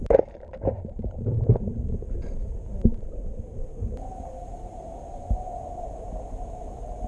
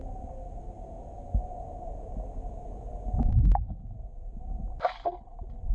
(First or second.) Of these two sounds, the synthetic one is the first